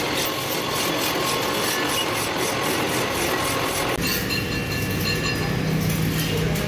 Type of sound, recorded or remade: recorded